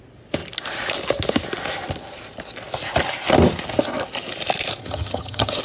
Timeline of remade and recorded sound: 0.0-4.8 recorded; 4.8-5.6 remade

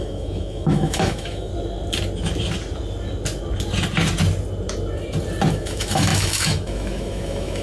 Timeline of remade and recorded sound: 0.0-1.5 remade; 1.5-5.5 recorded; 5.5-7.6 remade

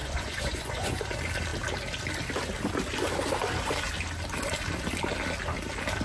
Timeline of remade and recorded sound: 0.0-1.0 remade; 1.0-6.0 recorded

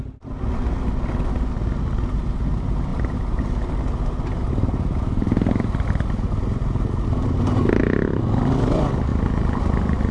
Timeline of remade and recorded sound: 0.0-10.1 recorded

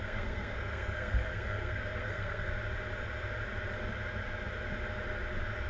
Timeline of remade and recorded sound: 0.0-2.5 remade; 2.5-5.7 recorded

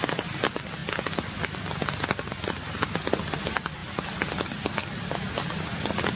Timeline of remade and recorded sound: 0.0-6.2 recorded

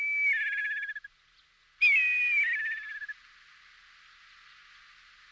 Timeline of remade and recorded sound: 0.0-5.3 recorded

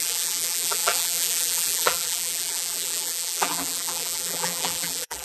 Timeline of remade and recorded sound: 0.0-5.2 remade